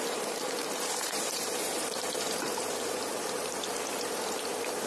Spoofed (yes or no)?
yes